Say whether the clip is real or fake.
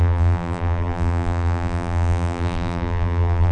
fake